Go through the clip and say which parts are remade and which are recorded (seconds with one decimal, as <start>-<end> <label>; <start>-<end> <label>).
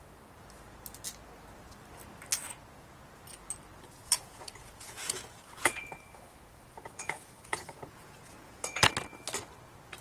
0.0-4.0 recorded; 4.0-8.9 remade; 8.9-10.0 recorded